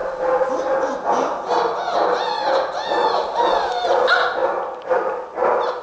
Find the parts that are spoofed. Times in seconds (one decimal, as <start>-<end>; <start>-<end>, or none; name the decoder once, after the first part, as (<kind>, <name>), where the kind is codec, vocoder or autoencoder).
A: none